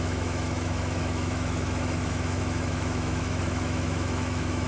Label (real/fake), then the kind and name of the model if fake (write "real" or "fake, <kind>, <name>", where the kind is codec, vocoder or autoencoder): fake, autoencoder, DAC-VAE